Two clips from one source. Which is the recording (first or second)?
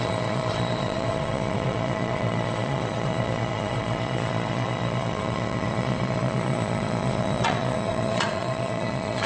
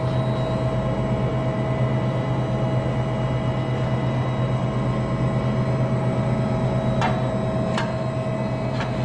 second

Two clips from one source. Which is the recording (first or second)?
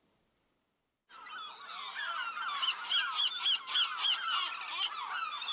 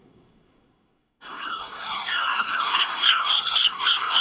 first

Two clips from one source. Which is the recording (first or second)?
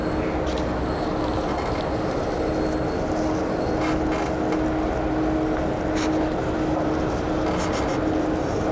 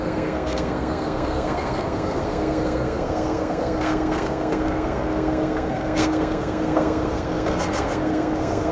first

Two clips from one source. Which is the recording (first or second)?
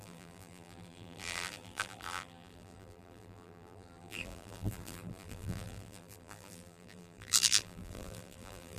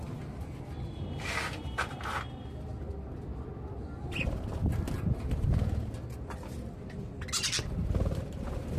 second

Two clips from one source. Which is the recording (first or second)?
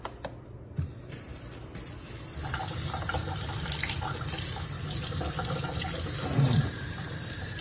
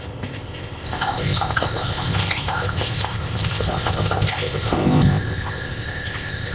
first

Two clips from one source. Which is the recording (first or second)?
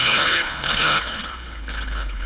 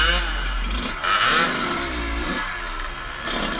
second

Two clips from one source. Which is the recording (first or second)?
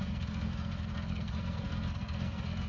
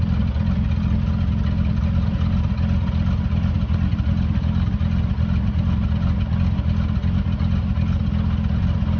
second